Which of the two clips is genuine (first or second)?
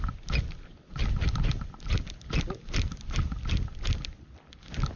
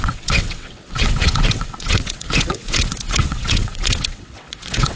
first